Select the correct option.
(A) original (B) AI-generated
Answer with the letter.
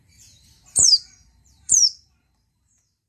B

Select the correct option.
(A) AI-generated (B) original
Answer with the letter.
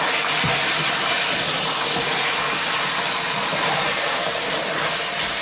B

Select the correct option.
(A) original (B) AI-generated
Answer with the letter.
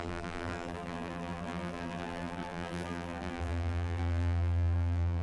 B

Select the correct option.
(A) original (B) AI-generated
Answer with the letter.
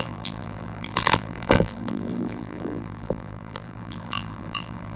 B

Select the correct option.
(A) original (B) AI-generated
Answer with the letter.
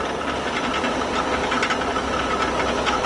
A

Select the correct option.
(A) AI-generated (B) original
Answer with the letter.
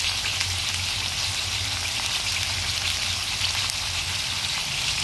A